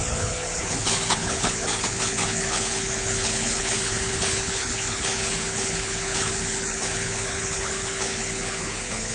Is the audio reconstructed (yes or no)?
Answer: yes